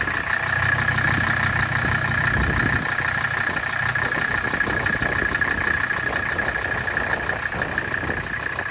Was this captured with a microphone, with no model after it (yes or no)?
yes